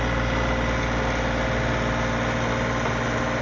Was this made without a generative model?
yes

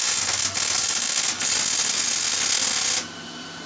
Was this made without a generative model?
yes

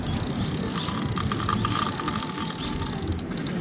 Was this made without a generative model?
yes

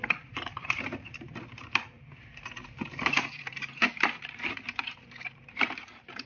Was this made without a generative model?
no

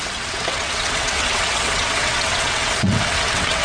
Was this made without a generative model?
no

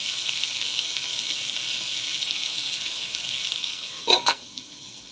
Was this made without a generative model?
no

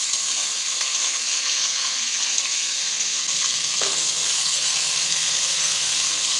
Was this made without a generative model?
no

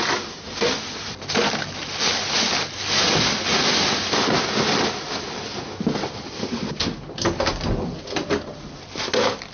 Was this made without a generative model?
yes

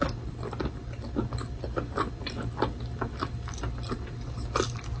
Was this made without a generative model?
no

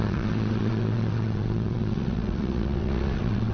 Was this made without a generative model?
no